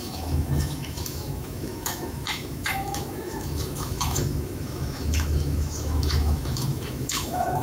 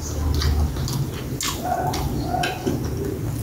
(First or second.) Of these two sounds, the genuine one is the second